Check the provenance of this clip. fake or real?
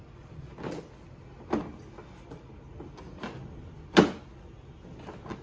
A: real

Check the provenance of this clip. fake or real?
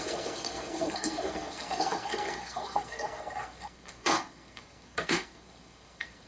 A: fake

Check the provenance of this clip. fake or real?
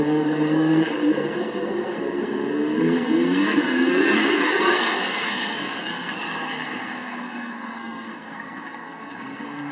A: fake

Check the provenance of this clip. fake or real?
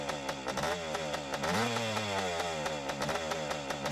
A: real